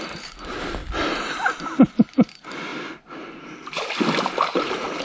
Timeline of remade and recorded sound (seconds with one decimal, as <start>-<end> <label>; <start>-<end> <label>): 0.0-0.8 remade; 0.8-1.9 recorded; 1.9-2.7 remade; 2.7-4.5 recorded; 4.5-5.0 remade